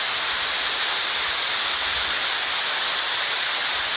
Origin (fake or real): real